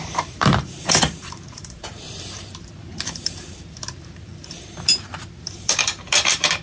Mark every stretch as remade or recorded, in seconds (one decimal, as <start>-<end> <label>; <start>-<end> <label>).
0.0-6.6 remade